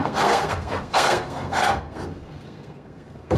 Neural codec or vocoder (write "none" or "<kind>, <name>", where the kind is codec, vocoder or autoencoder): codec, SNAC